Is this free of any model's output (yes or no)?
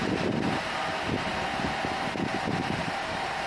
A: yes